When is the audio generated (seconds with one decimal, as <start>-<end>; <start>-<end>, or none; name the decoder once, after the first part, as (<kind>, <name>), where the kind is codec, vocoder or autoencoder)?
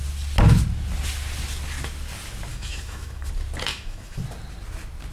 2.5-3.3 (autoencoder, DAC-VAE); 3.7-4.2